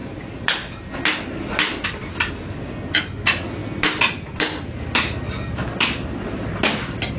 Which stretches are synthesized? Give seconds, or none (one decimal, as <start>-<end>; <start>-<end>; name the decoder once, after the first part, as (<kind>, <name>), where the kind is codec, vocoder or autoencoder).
none